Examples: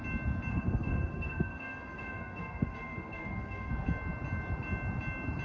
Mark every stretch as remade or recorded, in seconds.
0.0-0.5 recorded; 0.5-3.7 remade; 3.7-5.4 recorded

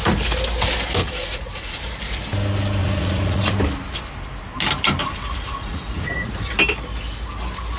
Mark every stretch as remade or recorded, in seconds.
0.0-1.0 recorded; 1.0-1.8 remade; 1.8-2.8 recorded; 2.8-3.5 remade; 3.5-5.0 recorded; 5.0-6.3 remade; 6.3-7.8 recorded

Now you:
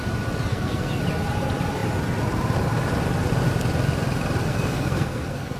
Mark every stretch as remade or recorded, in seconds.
0.0-0.5 recorded; 0.5-1.0 remade; 1.0-4.4 recorded; 4.4-5.6 remade

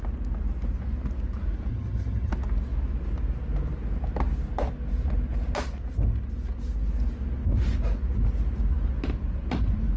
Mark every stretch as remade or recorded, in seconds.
0.0-1.7 recorded; 1.7-2.3 remade; 2.3-10.0 recorded

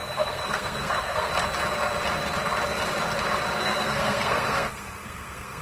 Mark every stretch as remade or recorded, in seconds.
0.0-1.3 remade; 1.3-3.6 recorded; 3.6-5.6 remade